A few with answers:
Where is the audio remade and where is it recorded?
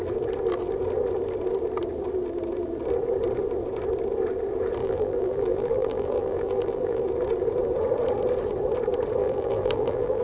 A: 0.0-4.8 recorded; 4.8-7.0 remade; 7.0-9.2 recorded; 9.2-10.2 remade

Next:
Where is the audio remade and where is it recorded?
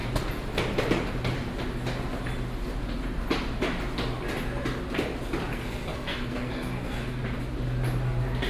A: 0.0-5.5 recorded; 5.5-7.2 remade; 7.2-8.5 recorded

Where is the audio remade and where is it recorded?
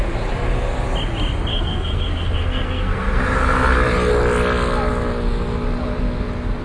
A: 0.0-1.5 recorded; 1.5-3.2 remade; 3.2-6.6 recorded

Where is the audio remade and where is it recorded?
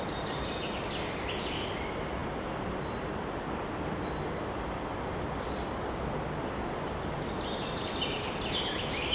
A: 0.0-9.1 recorded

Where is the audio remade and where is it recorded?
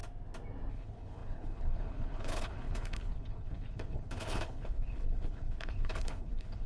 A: 0.0-0.7 recorded; 0.7-6.7 remade